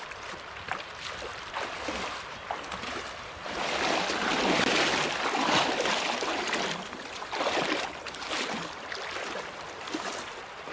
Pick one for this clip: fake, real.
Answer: real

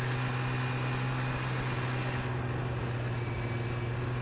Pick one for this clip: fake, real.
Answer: real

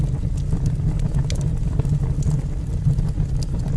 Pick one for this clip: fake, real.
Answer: real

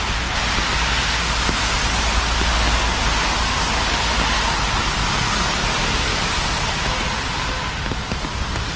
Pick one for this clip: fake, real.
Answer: real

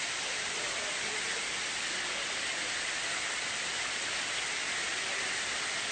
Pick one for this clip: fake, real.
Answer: real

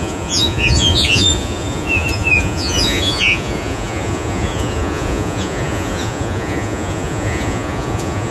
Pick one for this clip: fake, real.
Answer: fake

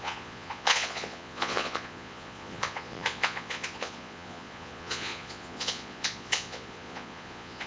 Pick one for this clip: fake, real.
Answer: fake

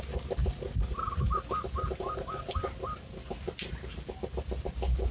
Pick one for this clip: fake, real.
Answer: real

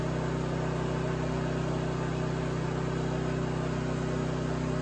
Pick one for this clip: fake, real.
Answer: real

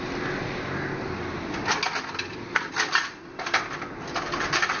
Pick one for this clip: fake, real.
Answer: real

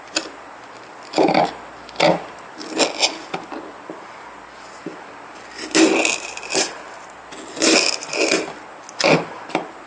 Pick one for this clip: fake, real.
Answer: real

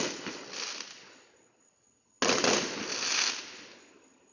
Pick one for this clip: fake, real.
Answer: real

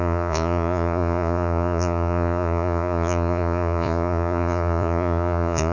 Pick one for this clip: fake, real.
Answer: fake